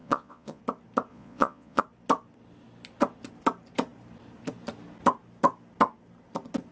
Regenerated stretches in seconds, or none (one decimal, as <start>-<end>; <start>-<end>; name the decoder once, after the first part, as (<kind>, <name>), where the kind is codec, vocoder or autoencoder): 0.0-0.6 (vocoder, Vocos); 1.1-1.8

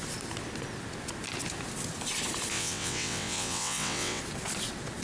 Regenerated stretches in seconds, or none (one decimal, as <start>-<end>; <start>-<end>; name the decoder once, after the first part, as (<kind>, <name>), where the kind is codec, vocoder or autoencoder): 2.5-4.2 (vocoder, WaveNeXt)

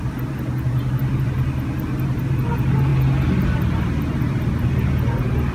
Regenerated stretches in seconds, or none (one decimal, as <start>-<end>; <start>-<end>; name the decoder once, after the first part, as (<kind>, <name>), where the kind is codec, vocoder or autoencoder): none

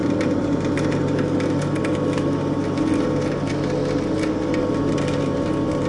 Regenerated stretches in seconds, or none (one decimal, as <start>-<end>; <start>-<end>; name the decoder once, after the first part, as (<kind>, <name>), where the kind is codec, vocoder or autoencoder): 0.0-0.7 (vocoder, BigVGAN v2)